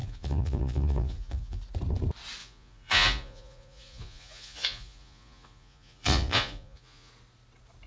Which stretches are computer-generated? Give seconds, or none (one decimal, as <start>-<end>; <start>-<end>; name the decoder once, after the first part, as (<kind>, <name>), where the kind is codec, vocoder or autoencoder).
0.0-1.6 (vocoder, Vocos); 2.4-7.1